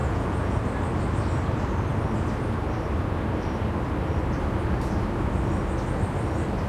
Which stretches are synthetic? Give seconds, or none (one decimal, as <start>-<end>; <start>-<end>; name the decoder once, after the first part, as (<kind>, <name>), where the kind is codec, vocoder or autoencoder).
0.0-0.6 (vocoder, Vocos)